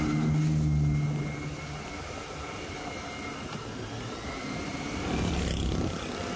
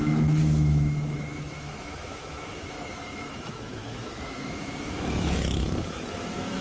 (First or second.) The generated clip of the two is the second